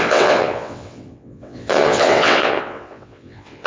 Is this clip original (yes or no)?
no